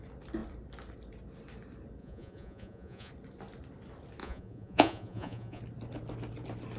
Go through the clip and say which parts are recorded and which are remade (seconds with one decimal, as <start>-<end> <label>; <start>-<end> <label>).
0.0-2.0 recorded; 2.0-3.1 remade; 3.1-4.2 recorded; 4.2-5.6 remade; 5.6-6.8 recorded